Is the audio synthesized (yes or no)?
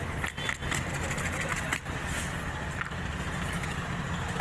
no